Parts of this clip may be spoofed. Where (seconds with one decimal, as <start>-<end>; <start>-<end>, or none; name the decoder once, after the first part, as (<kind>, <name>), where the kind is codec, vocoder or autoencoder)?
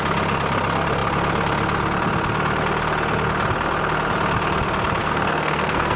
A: 5.0-6.0 (codec, SNAC)